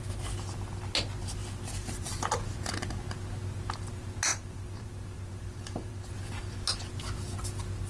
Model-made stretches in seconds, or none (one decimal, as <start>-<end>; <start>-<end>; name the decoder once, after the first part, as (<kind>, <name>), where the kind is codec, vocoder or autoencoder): 1.4-2.2 (vocoder, BigVGAN v2); 4.3-6.1